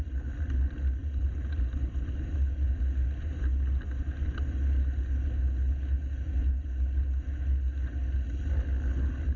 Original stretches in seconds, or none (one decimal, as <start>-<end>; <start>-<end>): 0.0-9.4